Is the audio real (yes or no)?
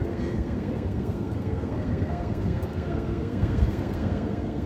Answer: no